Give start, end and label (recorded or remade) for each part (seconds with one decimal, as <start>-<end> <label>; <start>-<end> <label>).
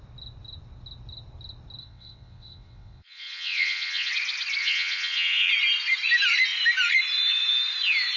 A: 0.0-1.8 recorded; 1.8-4.1 remade; 4.1-4.6 recorded; 4.6-5.5 remade; 5.5-8.2 recorded